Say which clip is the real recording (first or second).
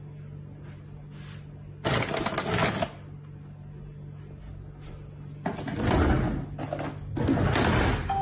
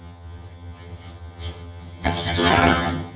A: first